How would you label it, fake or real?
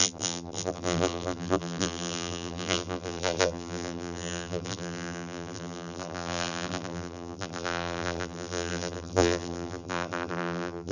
fake